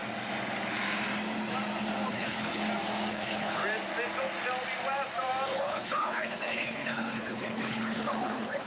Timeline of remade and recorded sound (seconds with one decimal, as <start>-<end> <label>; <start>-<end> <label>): 0.0-2.1 recorded; 2.1-2.6 remade; 2.6-3.1 recorded; 3.1-3.6 remade; 3.6-5.5 recorded; 5.5-8.7 remade